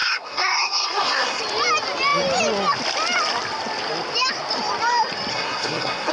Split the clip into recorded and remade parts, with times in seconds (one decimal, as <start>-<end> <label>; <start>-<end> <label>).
0.0-1.4 remade; 1.4-5.3 recorded; 5.3-6.1 remade